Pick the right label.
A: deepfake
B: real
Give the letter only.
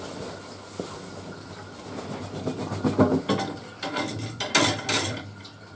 B